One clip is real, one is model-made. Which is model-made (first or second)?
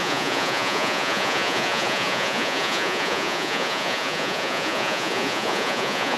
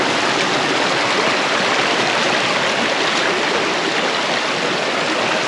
first